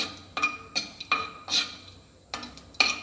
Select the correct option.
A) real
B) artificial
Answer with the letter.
A